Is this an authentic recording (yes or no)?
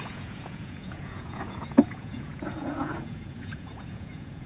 no